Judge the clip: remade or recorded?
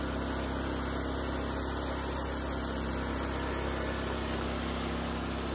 recorded